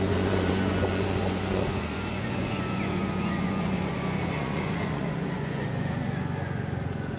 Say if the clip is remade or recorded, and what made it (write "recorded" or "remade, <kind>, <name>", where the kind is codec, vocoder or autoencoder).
remade, vocoder, Vocos